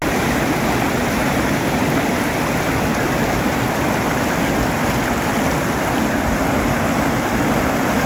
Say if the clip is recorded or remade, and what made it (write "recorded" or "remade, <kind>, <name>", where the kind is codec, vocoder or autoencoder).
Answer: recorded